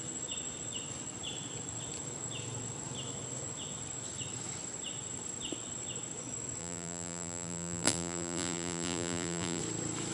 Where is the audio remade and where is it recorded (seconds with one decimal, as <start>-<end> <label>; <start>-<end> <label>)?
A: 0.0-6.6 recorded; 6.6-9.6 remade; 9.6-10.1 recorded